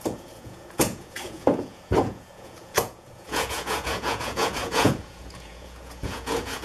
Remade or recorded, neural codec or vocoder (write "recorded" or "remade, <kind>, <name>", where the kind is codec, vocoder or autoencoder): remade, vocoder, Vocos